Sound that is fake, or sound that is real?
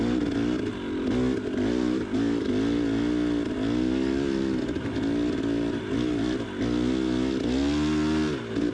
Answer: real